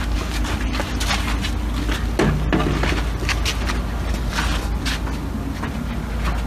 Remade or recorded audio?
recorded